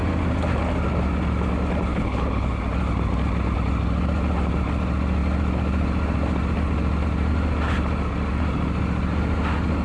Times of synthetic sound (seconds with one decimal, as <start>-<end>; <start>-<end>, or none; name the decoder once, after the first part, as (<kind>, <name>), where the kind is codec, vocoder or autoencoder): 1.9-2.5 (codec, HILCodec)

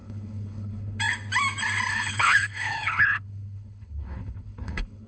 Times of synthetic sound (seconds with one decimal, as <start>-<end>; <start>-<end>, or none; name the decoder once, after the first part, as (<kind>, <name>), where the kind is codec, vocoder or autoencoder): 0.0-1.0 (codec, HILCodec); 1.9-5.1

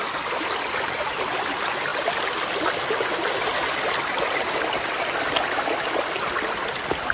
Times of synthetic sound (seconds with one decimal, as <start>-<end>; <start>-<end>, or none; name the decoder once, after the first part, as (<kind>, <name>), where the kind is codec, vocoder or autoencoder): none